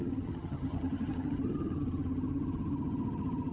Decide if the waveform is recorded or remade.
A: remade